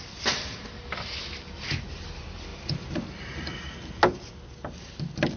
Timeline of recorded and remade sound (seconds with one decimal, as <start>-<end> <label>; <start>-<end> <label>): 0.0-5.4 recorded